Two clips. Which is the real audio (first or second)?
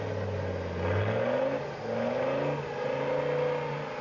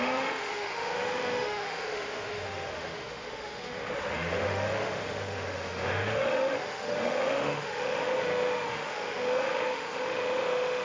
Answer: first